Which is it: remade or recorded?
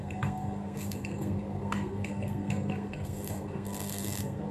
remade